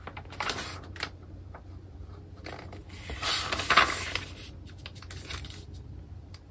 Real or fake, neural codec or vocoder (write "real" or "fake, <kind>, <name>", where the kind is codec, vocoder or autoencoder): real